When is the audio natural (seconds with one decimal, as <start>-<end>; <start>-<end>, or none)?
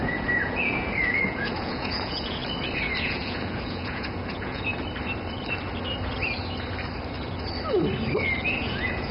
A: 2.4-3.0; 4.7-8.6